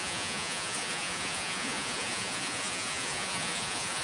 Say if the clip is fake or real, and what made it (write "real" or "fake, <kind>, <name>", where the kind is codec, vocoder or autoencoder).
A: fake, vocoder, Vocos